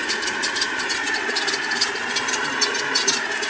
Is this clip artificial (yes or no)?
yes